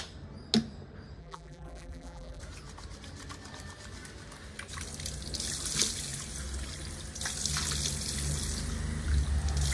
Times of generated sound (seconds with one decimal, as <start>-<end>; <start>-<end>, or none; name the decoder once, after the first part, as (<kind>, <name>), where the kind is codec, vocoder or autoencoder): 1.2-2.4 (vocoder, BigVGAN v2)